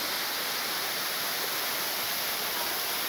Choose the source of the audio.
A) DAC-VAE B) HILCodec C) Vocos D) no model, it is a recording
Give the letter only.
D